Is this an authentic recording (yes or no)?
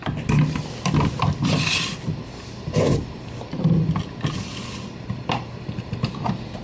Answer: yes